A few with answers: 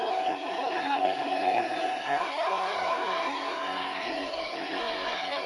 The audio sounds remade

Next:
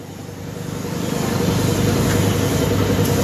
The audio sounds recorded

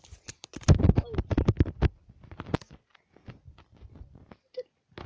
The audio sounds recorded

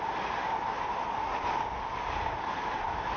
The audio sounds recorded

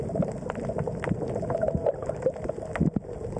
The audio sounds recorded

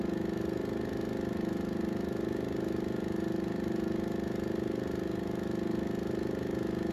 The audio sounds recorded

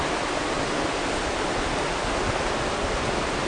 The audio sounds recorded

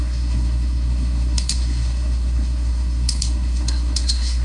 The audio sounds remade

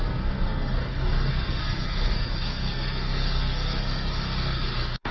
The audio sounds remade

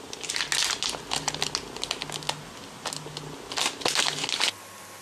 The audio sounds recorded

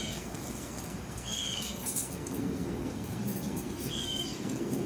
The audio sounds remade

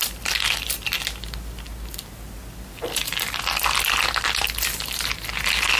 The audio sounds recorded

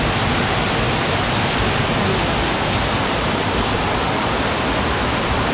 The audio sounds recorded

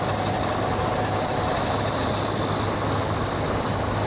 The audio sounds recorded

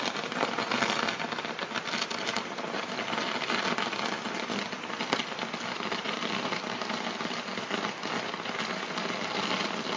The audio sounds recorded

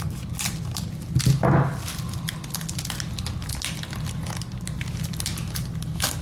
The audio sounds recorded